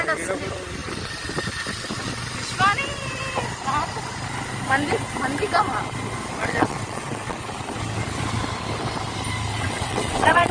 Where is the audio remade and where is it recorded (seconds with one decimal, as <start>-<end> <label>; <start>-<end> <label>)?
0.0-6.4 recorded; 6.4-7.4 remade; 7.4-9.5 recorded; 9.5-10.5 remade